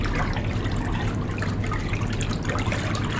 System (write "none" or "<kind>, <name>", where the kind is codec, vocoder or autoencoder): none